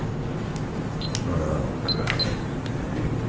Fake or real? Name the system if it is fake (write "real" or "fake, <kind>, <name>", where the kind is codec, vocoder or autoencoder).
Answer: real